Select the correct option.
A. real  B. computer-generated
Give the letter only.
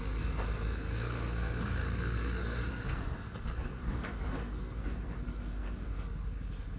B